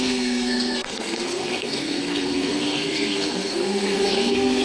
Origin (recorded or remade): remade